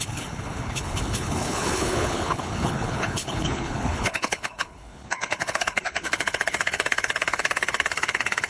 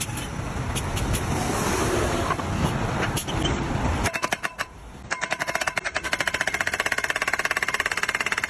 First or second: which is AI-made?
first